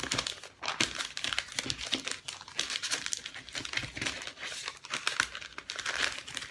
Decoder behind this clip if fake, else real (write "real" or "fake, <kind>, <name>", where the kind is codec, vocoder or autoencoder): real